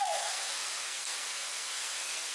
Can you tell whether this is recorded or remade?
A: remade